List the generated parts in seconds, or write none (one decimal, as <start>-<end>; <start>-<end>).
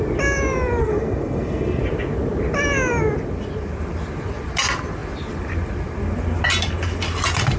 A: 0.8-1.8